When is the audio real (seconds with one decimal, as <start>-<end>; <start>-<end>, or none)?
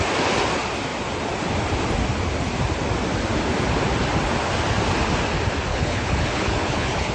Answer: 0.0-5.7